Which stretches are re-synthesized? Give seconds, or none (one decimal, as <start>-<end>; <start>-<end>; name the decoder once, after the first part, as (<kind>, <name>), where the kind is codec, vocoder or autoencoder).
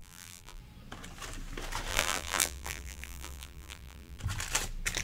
0.0-0.6 (vocoder, BigVGAN v2); 1.9-4.2